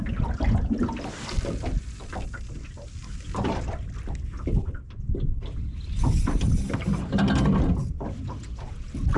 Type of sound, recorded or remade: recorded